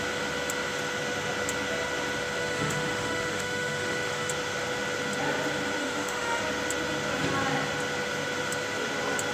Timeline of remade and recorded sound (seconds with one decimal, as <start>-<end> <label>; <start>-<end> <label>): 0.0-2.4 recorded; 2.4-4.3 remade; 4.3-5.8 recorded; 5.8-6.4 remade; 6.4-9.3 recorded